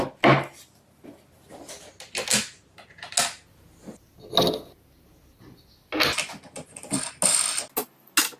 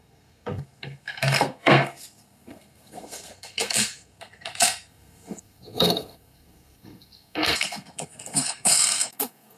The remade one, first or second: second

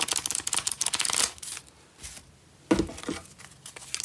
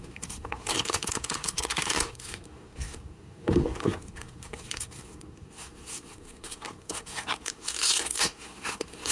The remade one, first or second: second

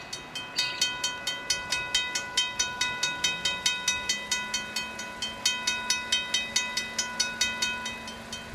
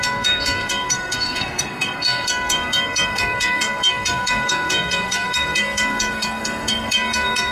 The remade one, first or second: second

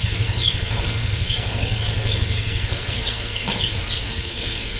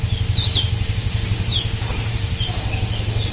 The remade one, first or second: first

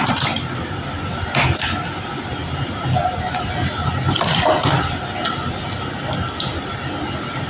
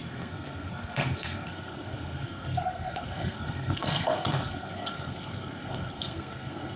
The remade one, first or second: second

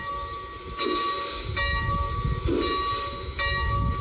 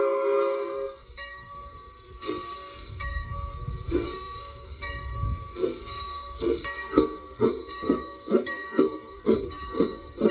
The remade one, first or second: second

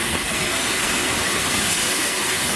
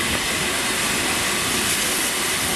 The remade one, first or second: first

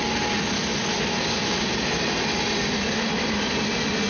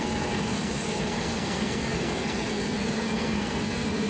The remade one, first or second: second